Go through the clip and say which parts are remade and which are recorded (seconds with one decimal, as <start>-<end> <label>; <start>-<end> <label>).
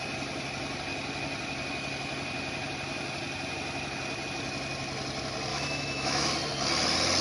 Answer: 0.0-5.5 recorded; 5.5-6.3 remade; 6.3-7.2 recorded